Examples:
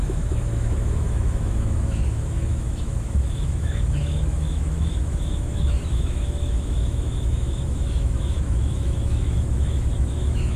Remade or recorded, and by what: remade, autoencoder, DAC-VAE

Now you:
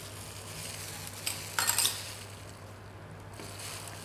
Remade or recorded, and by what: recorded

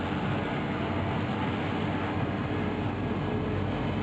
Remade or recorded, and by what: recorded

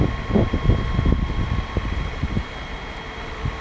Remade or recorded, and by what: remade, vocoder, BigVGAN v2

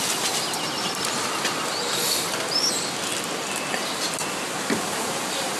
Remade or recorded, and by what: recorded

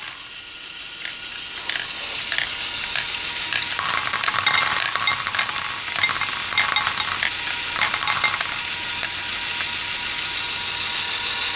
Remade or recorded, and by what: recorded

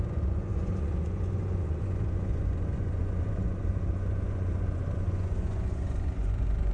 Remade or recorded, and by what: remade, vocoder, Vocos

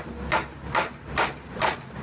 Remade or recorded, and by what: recorded